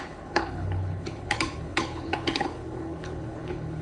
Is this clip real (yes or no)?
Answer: no